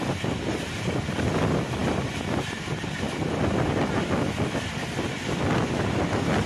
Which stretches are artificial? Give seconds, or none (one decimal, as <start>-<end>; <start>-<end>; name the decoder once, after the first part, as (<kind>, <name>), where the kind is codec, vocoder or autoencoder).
none

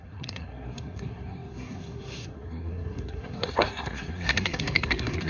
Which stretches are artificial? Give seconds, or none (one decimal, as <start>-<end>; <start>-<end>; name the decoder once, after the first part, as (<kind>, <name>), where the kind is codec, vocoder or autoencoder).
0.0-5.3 (codec, SNAC)

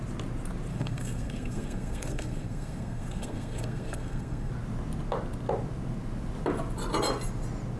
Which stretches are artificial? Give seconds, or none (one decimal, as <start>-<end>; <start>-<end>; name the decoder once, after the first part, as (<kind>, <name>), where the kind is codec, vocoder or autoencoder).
0.7-4.5 (codec, SNAC)

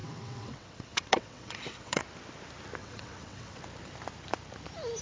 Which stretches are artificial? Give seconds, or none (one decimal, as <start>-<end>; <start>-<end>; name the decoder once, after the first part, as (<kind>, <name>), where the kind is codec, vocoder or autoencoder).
0.0-2.0 (vocoder, WaveNeXt); 2.8-3.6

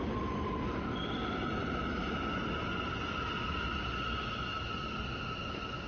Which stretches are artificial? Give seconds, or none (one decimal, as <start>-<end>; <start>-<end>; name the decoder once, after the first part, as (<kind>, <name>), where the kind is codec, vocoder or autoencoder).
none

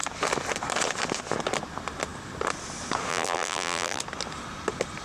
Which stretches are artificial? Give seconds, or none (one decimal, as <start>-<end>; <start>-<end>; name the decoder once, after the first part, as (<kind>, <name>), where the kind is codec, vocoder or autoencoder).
3.1-4.0 (vocoder, BigVGAN v2)